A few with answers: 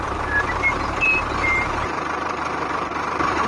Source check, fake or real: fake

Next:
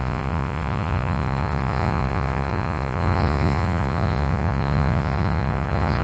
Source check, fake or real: fake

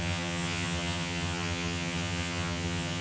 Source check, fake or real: fake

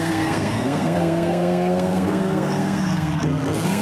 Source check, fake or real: fake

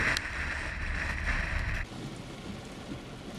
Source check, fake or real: real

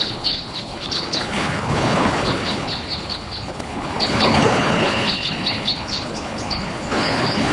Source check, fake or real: fake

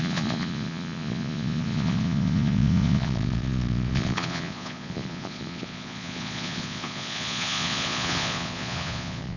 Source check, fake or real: fake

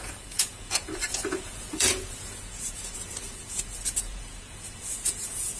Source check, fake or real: fake